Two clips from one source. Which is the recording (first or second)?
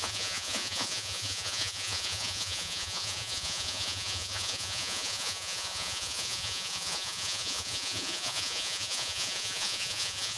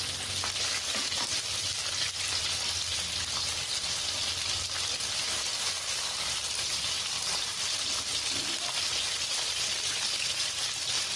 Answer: second